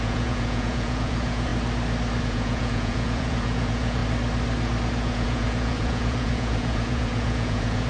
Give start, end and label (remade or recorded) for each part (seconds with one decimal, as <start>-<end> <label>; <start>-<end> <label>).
0.0-1.5 remade; 1.5-2.2 recorded; 2.2-4.0 remade; 4.0-4.9 recorded; 4.9-7.9 remade